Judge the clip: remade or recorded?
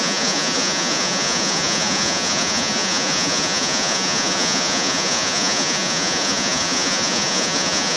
remade